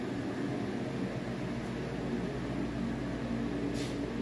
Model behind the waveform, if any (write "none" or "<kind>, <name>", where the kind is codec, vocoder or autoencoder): none